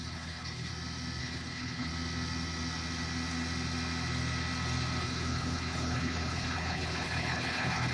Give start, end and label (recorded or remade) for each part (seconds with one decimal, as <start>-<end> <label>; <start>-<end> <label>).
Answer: 0.0-0.7 remade; 0.7-1.2 recorded; 1.2-1.9 remade; 1.9-5.0 recorded; 5.0-7.9 remade